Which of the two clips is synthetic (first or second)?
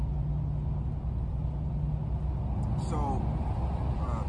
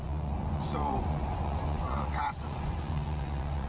second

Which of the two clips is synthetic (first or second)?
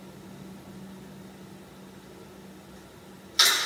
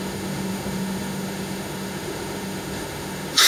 second